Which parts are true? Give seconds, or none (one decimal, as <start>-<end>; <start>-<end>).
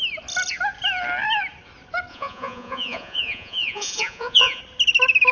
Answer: 0.0-2.1; 4.6-5.3